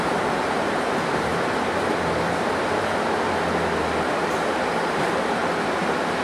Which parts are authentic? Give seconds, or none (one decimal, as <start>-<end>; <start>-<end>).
1.3-4.0; 5.4-6.2